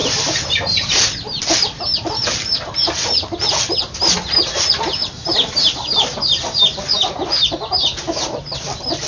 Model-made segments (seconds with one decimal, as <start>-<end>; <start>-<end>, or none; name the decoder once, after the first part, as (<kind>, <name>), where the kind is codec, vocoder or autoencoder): 0.0-1.4 (vocoder, BigVGAN v2); 5.0-8.4